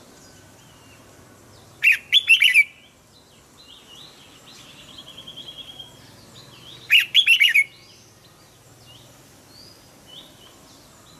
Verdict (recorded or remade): recorded